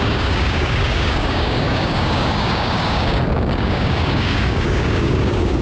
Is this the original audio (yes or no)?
no